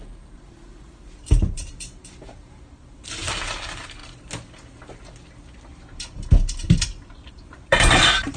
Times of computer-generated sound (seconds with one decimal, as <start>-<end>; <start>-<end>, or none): 0.0-4.0; 7.3-8.4